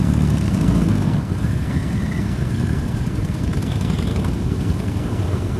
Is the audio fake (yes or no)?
yes